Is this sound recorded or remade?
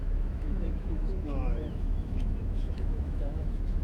remade